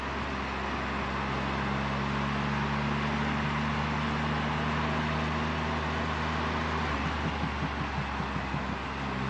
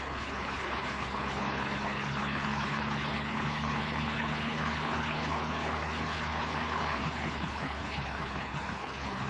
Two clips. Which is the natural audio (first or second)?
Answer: first